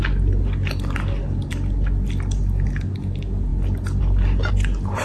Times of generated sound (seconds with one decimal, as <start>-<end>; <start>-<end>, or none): none